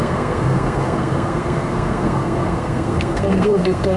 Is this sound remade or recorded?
remade